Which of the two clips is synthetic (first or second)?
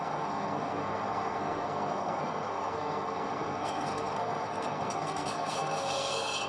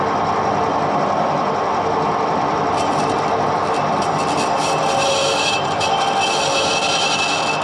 first